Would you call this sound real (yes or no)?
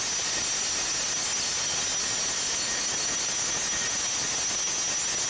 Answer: yes